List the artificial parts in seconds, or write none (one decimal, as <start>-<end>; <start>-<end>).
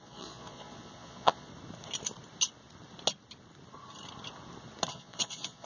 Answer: 0.0-1.5; 4.9-5.7